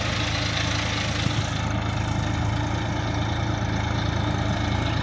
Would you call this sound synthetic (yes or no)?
no